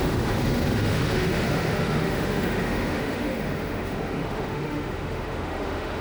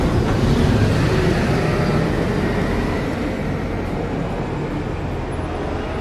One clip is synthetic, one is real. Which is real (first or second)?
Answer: second